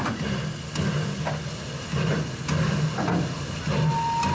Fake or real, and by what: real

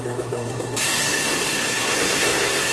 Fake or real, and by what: fake, codec, SNAC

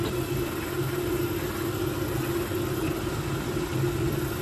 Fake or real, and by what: real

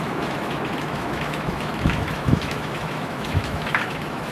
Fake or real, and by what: fake, autoencoder, DAC-VAE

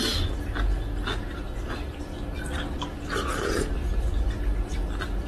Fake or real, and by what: real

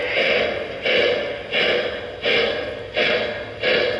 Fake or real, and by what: real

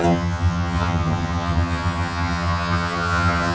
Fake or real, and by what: fake, vocoder, HiFi-GAN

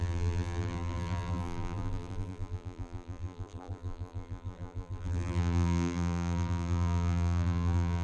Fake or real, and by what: fake, vocoder, BigVGAN v2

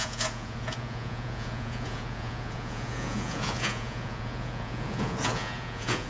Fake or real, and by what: fake, vocoder, Vocos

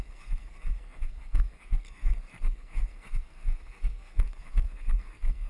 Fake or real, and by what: fake, codec, SNAC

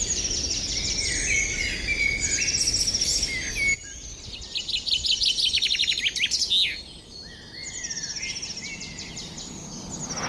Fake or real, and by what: real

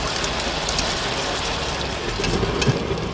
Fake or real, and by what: real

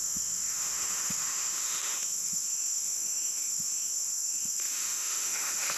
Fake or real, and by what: fake, autoencoder, DAC-VAE